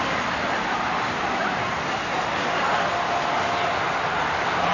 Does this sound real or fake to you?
real